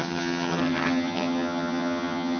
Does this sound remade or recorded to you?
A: remade